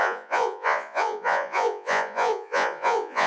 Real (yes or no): no